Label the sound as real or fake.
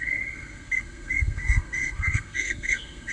fake